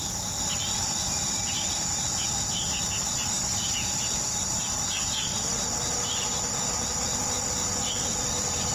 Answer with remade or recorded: recorded